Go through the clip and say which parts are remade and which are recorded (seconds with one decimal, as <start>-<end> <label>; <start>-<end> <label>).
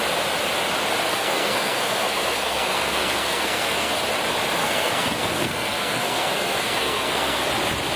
0.0-1.1 recorded; 1.1-3.9 remade; 3.9-4.6 recorded; 4.6-7.5 remade; 7.5-8.0 recorded